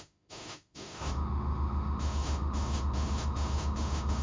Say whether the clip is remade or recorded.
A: remade